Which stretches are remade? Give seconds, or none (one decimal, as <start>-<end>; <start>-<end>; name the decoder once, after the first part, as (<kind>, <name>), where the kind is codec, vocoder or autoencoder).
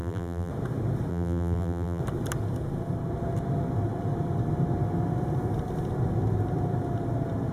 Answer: 0.0-0.5 (vocoder, BigVGAN v2); 1.1-2.0